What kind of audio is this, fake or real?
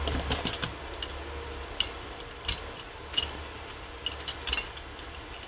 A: real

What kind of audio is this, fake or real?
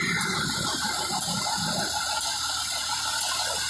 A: real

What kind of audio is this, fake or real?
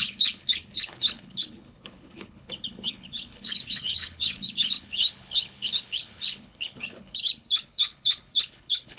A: fake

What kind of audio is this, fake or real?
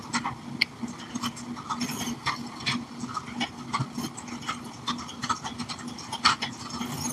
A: real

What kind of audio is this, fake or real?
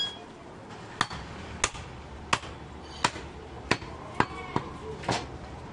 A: real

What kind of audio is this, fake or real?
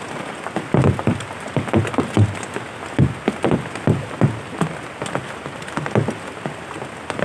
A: real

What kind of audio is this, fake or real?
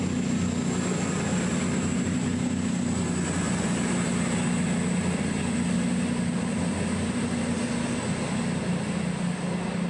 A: real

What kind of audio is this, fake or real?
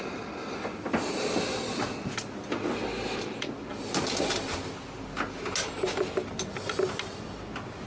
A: real